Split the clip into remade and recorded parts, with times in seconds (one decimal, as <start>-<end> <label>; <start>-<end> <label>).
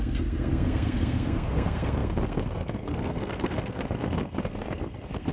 0.0-5.3 remade